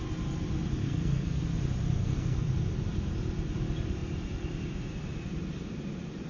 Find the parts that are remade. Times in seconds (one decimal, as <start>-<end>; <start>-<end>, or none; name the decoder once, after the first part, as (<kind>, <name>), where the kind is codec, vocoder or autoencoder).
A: 0.8-1.4 (codec, SNAC); 2.0-2.5